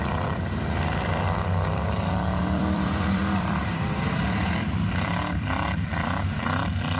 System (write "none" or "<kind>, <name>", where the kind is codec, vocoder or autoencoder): vocoder, BigVGAN v2